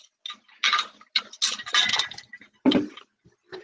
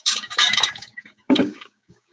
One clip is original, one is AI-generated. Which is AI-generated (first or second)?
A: second